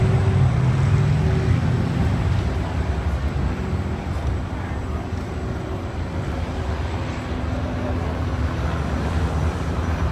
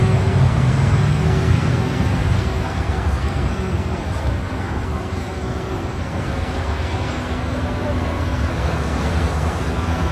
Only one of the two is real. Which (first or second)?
first